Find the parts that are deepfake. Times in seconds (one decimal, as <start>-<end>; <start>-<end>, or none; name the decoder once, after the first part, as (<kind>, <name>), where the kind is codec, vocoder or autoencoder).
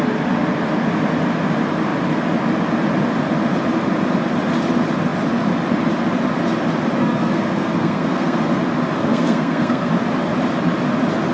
7.0-8.4 (codec, SNAC); 9.0-9.9